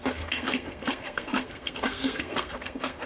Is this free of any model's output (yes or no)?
no